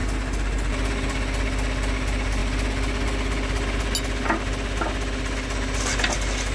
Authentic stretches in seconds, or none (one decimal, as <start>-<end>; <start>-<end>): 0.0-6.5